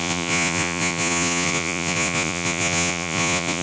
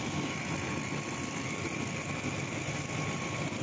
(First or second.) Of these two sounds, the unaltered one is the second